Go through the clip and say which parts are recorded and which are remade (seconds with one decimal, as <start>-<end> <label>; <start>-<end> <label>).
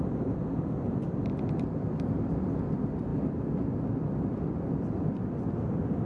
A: 0.0-6.1 remade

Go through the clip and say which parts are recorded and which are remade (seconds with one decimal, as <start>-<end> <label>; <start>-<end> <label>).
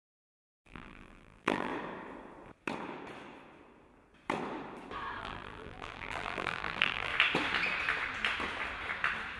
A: 0.0-1.7 remade; 1.7-5.2 recorded; 5.2-7.1 remade; 7.1-9.4 recorded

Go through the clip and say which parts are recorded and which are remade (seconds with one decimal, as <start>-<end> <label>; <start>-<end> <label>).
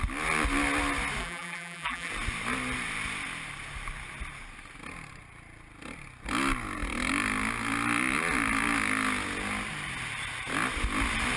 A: 0.0-1.2 recorded; 1.2-2.1 remade; 2.1-11.4 recorded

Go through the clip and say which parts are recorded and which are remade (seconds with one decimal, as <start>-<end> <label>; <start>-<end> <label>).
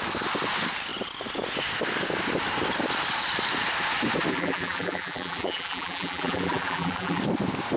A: 0.0-4.3 recorded; 4.3-7.2 remade; 7.2-7.8 recorded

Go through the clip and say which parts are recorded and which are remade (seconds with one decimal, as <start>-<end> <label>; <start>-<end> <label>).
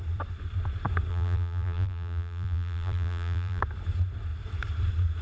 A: 0.0-1.1 recorded; 1.1-3.6 remade; 3.6-5.2 recorded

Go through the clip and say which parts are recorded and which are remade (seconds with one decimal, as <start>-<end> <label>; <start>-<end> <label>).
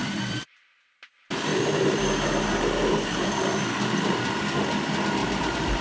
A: 0.0-1.1 remade; 1.1-1.5 recorded; 1.5-4.2 remade; 4.2-5.2 recorded; 5.2-5.8 remade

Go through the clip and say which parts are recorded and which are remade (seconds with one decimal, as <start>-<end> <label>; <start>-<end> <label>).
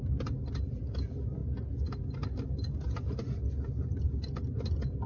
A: 0.0-5.1 recorded